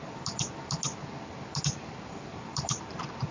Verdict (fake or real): real